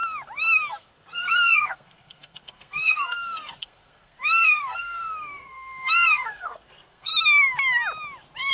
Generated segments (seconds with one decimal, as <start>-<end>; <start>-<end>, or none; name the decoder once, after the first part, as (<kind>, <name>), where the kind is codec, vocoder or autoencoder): 0.7-7.1 (codec, SNAC)